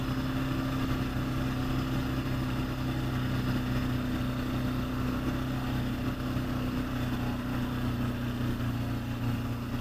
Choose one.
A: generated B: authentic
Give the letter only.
B